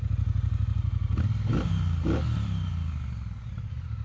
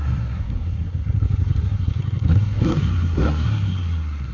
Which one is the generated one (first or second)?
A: second